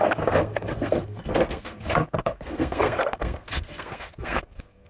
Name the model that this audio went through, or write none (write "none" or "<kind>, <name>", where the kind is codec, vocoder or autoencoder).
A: codec, SNAC